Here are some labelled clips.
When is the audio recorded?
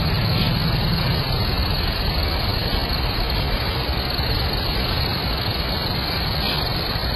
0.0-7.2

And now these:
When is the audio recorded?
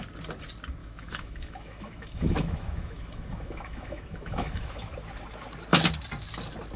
0.0-0.8; 4.9-6.8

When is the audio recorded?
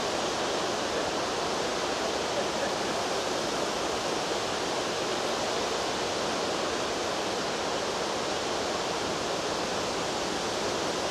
0.0-11.1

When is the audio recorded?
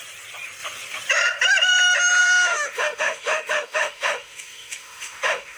0.0-2.2